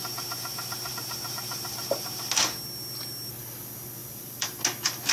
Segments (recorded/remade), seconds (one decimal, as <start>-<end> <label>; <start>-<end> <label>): 0.0-4.0 recorded; 4.0-4.6 remade; 4.6-5.1 recorded